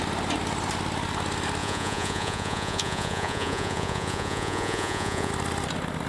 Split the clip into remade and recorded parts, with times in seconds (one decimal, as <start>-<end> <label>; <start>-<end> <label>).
0.0-1.6 recorded; 1.6-5.3 remade; 5.3-6.1 recorded

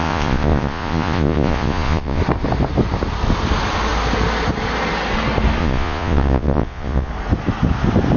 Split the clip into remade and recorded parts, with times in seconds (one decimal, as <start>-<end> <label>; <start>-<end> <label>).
0.0-2.2 remade; 2.2-5.6 recorded; 5.6-7.1 remade; 7.1-8.2 recorded

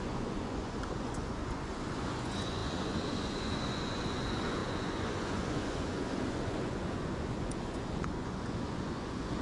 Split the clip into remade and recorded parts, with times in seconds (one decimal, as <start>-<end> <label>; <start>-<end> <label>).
0.0-9.4 remade

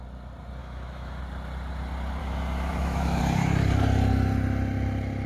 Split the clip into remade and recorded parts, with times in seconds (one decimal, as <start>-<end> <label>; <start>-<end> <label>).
0.0-0.6 recorded; 0.6-1.2 remade; 1.2-2.2 recorded; 2.2-3.2 remade; 3.2-5.3 recorded

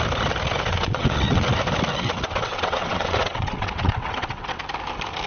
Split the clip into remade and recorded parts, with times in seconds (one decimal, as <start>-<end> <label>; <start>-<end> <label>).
0.0-0.7 recorded; 0.7-1.5 remade; 1.5-1.9 recorded; 1.9-4.6 remade; 4.6-5.3 recorded

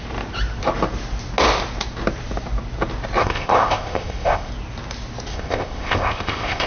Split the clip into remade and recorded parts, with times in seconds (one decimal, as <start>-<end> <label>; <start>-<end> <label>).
0.0-3.2 recorded; 3.2-4.5 remade; 4.5-5.3 recorded; 5.3-6.7 remade

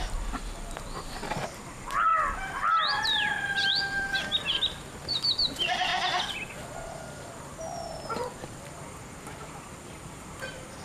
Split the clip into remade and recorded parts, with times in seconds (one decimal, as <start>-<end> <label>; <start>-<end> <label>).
0.0-2.1 remade; 2.1-3.0 recorded; 3.0-5.9 remade; 5.9-6.7 recorded; 6.7-10.8 remade

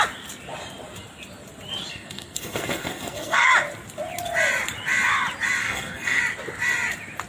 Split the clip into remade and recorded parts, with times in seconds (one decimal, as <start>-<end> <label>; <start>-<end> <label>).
0.0-1.9 recorded; 1.9-3.5 remade; 3.5-5.6 recorded; 5.6-6.2 remade; 6.2-7.3 recorded